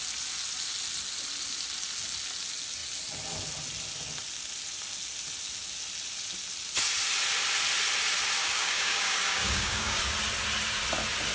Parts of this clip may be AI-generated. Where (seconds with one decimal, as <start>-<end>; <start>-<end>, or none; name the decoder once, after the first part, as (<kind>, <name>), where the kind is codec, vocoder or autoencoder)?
8.4-10.0 (codec, DAC)